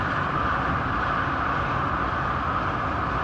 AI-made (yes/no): no